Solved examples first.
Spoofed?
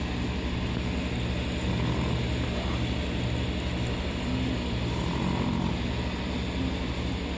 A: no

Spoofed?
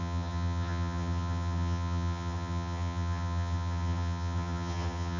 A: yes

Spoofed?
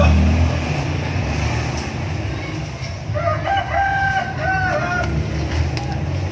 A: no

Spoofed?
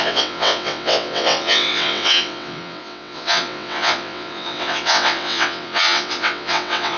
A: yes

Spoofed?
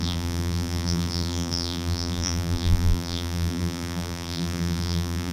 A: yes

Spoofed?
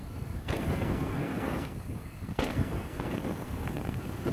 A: yes